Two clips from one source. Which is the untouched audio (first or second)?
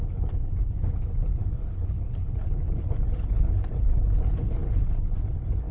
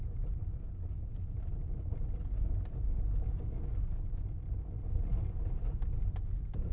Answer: second